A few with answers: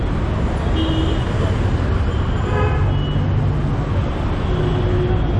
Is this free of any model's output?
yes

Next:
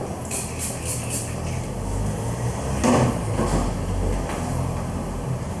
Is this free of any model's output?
yes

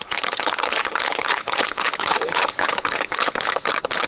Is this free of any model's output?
no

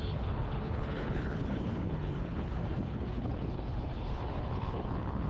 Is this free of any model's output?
no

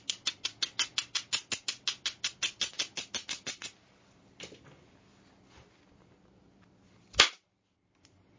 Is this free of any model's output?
yes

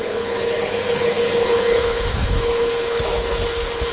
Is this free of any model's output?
no